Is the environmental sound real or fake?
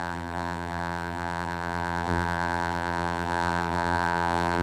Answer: fake